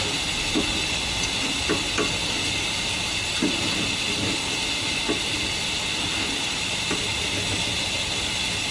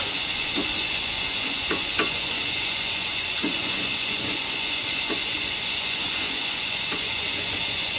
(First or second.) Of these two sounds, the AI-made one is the second